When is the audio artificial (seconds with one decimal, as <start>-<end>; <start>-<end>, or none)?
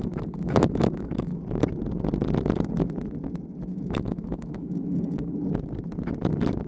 0.0-1.4; 3.7-5.3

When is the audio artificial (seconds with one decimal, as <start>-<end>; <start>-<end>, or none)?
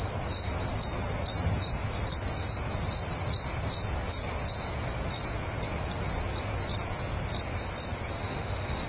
8.2-8.9